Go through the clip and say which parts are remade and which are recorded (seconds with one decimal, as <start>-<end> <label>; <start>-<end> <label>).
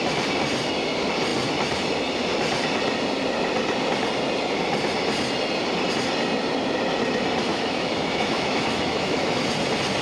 0.0-7.5 recorded; 7.5-9.3 remade; 9.3-10.0 recorded